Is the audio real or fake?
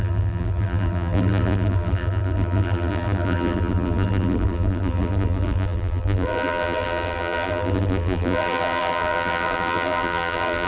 fake